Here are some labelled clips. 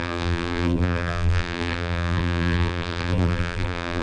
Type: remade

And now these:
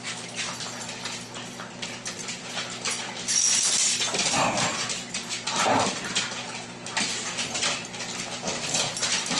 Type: remade